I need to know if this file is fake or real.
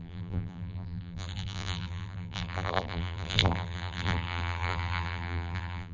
fake